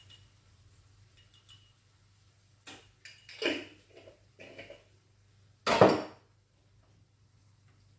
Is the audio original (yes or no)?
yes